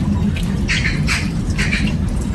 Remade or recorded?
recorded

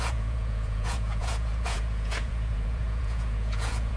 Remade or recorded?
remade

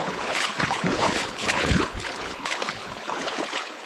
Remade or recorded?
remade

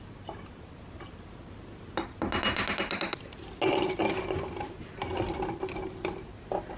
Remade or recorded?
recorded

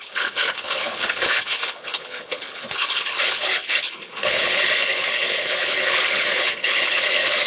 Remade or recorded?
remade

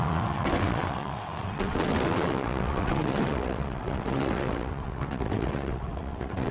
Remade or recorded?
remade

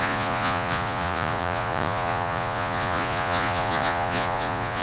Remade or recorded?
remade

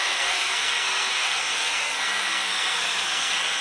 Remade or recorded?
remade